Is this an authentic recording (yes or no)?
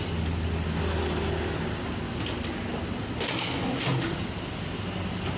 yes